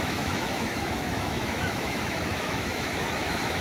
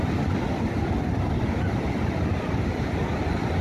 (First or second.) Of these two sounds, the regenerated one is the first